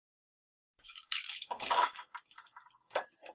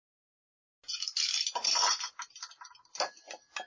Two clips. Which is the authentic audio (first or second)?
second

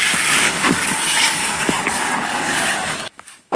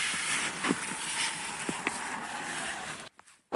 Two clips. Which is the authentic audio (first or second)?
second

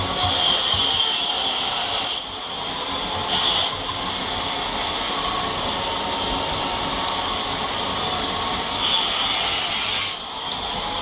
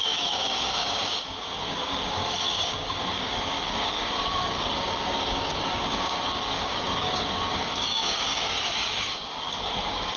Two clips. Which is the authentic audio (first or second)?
first